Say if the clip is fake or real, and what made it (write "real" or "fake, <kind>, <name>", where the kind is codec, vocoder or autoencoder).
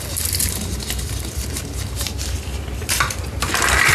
real